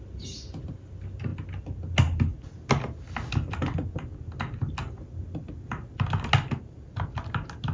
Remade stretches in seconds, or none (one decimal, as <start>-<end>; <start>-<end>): none